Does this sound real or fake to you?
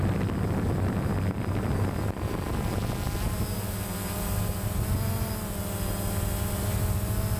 real